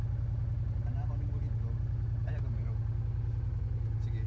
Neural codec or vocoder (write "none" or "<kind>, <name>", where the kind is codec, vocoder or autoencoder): none